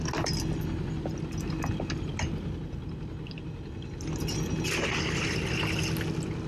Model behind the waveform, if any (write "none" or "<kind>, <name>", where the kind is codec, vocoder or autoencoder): none